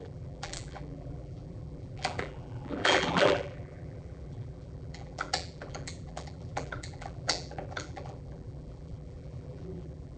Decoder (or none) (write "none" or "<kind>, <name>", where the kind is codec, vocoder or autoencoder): vocoder, BigVGAN v2